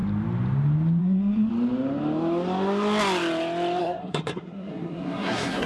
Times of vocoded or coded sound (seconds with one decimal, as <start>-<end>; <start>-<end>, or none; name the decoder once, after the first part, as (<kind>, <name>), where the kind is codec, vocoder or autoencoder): 1.0-1.5 (codec, SNAC); 3.8-5.7